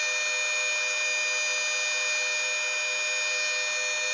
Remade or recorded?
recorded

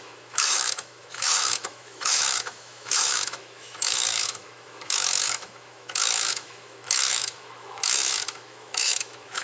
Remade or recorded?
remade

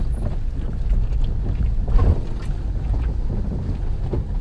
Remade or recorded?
recorded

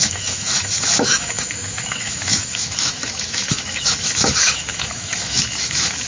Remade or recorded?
remade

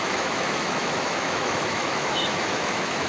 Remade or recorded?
remade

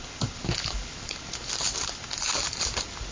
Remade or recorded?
recorded